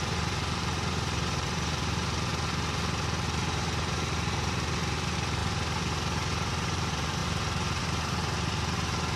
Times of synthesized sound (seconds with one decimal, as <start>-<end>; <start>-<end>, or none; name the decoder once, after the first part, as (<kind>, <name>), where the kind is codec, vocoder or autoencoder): 0.0-2.3 (vocoder, BigVGAN v2); 3.4-5.4; 6.5-9.2